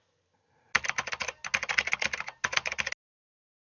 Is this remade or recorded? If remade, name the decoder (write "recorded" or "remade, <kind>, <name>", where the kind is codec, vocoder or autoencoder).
recorded